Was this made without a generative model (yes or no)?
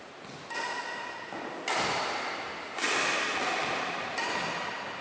yes